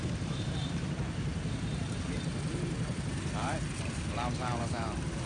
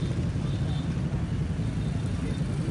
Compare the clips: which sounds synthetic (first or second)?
first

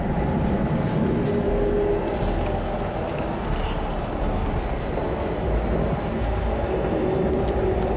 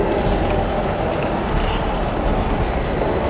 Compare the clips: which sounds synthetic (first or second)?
second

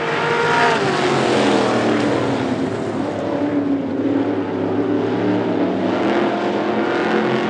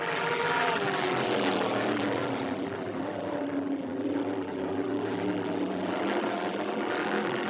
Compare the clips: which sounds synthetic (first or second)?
second